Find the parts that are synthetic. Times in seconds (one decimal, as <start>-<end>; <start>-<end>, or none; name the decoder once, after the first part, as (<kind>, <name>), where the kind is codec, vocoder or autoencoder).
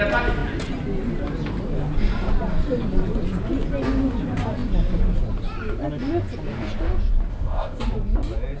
7.3-7.8 (codec, ZipCodec)